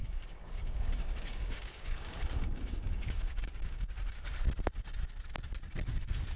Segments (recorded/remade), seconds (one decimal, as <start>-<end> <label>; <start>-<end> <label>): 0.0-3.8 remade; 3.8-6.4 recorded